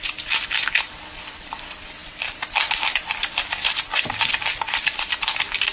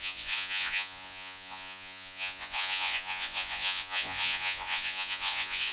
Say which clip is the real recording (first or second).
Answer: first